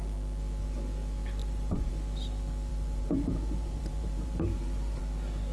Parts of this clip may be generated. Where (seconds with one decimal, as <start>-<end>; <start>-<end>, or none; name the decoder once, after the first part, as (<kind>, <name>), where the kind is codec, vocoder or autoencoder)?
1.4-1.9 (vocoder, BigVGAN v2); 2.7-5.0